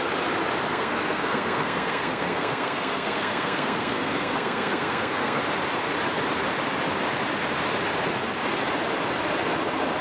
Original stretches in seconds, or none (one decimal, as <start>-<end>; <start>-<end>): 0.0-0.7; 5.4-10.0